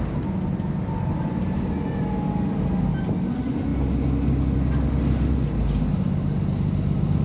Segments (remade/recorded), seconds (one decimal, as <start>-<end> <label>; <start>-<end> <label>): 0.0-7.2 recorded